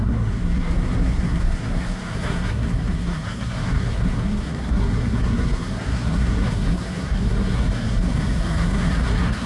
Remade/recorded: remade